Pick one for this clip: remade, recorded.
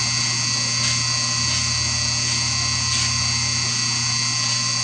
recorded